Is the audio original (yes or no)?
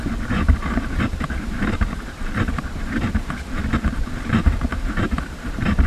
no